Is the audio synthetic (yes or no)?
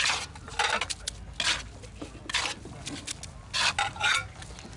no